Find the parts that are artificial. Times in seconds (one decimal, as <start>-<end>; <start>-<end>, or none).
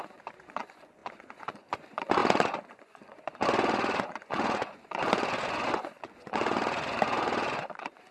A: 0.0-8.1